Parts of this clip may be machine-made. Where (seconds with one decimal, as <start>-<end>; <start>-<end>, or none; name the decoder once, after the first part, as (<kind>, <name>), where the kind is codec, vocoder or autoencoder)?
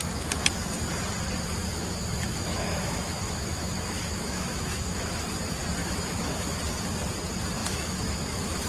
1.6-5.2 (autoencoder, DAC-VAE); 5.8-6.6; 7.6-8.7